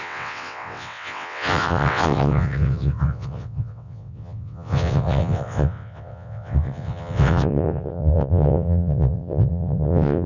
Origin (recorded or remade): remade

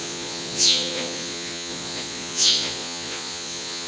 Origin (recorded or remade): remade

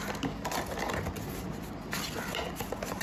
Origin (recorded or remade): recorded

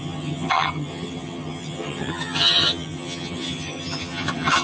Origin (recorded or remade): remade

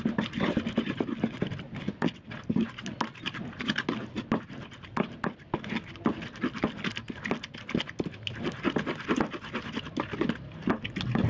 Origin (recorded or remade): recorded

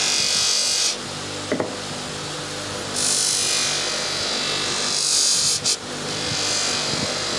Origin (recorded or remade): recorded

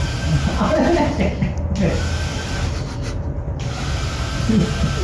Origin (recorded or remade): recorded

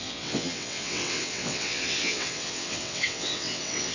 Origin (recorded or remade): remade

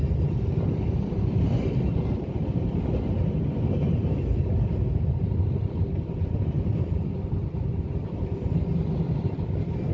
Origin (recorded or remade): recorded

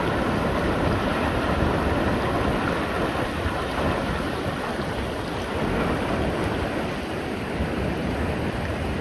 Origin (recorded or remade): recorded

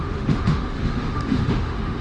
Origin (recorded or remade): remade